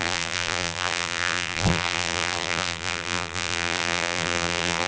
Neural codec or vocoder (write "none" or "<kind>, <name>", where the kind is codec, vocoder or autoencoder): vocoder, BigVGAN v2